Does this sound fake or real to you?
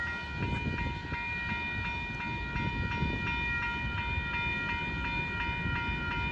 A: real